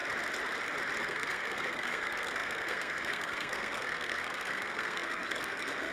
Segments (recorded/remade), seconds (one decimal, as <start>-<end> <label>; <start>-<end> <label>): 0.0-1.0 recorded; 1.0-5.9 remade